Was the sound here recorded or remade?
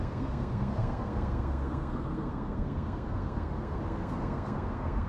remade